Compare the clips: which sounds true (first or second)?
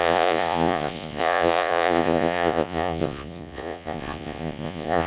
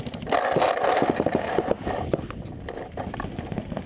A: second